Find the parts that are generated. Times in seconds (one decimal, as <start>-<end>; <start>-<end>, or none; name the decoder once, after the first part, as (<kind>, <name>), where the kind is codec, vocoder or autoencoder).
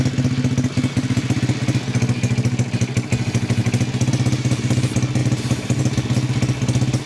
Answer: 5.2-5.8 (vocoder, BigVGAN v2)